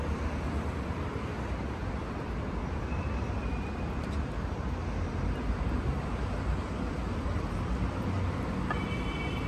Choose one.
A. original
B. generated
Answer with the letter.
A